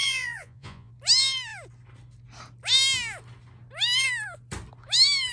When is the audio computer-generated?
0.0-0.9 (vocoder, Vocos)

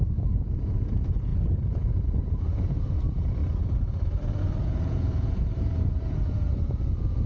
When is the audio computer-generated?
0.0-3.4 (vocoder, Vocos); 4.4-7.3

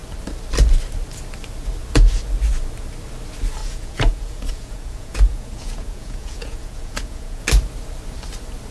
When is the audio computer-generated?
3.6-7.4 (vocoder, Vocos)

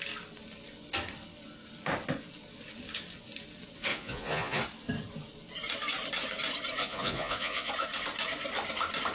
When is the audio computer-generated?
3.9-4.6 (vocoder, Vocos); 6.8-7.7

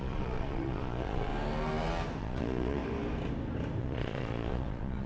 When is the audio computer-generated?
0.0-1.3 (vocoder, Vocos); 2.2-2.8; 3.8-5.1